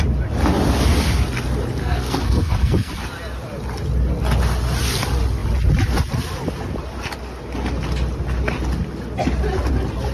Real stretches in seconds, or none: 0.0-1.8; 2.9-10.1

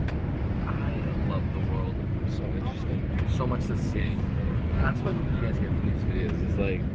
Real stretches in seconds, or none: 0.0-3.8; 5.4-6.9

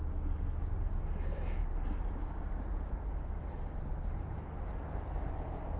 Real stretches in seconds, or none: 0.0-5.8

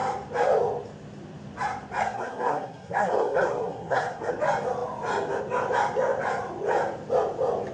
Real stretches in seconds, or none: 0.0-2.0; 4.3-7.7

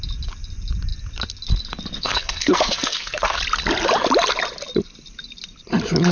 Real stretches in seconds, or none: 0.0-2.0; 3.4-6.1

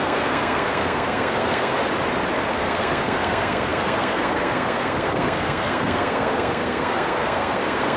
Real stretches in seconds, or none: 1.7-2.5

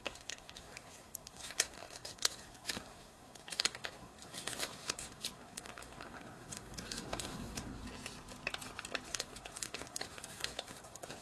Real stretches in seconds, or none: 7.8-9.1